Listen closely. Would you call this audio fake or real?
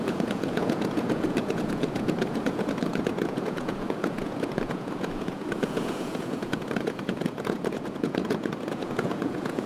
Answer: fake